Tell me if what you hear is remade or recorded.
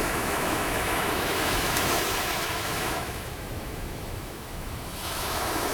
remade